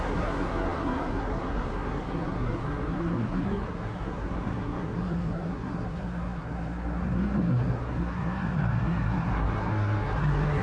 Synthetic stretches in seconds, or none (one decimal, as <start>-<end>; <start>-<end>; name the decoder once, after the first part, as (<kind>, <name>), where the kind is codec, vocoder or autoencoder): 0.0-10.6 (codec, SNAC)